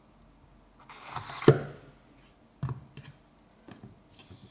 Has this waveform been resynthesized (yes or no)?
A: no